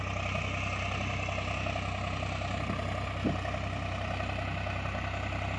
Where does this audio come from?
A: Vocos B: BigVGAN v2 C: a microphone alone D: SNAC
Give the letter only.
C